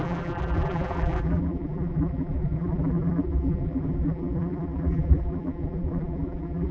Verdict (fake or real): fake